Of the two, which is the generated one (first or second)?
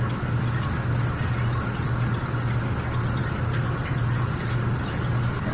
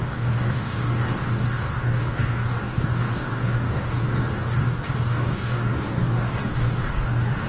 second